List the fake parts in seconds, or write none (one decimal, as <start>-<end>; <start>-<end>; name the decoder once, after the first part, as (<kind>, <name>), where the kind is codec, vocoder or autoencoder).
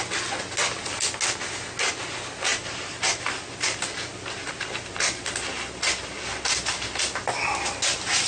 2.5-3.3 (vocoder, BigVGAN v2)